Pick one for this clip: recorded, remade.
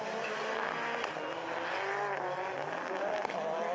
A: recorded